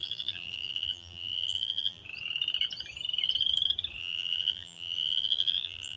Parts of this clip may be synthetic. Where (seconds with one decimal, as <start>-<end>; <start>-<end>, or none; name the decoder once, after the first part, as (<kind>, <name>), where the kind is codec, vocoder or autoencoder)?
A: 0.0-2.0 (vocoder, BigVGAN v2); 4.0-6.0